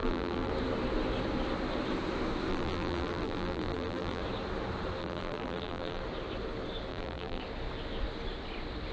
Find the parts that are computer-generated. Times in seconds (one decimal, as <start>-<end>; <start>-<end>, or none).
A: 0.0-0.5; 2.5-4.2; 5.0-6.0; 6.9-7.4